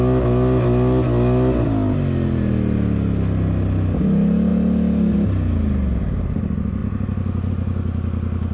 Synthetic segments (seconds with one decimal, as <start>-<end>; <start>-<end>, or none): none